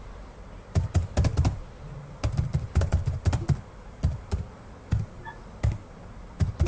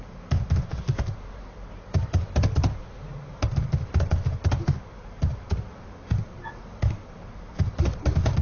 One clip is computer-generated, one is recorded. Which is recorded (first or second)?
second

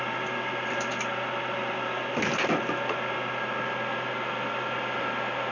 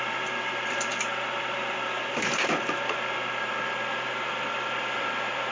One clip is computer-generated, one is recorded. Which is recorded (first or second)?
first